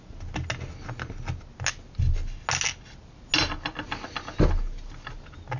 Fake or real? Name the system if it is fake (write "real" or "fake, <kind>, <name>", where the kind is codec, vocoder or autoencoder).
real